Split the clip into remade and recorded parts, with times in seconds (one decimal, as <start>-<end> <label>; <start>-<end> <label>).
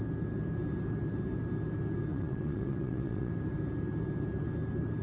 0.0-2.1 recorded; 2.1-3.3 remade; 3.3-5.0 recorded